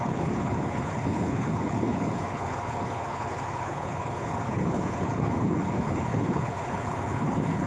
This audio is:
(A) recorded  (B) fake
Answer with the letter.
B